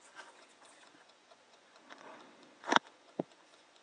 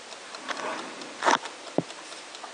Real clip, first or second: second